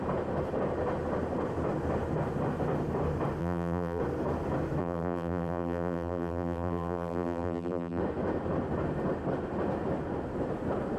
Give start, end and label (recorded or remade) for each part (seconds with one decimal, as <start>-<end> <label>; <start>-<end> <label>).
0.0-3.4 recorded; 3.4-4.0 remade; 4.0-4.8 recorded; 4.8-8.0 remade; 8.0-11.0 recorded